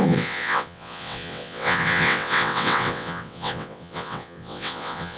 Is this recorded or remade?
remade